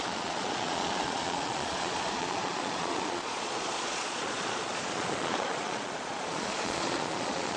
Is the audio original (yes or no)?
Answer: no